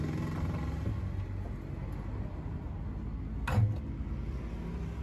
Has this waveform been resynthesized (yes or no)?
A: no